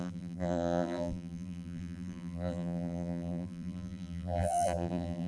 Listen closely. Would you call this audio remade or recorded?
remade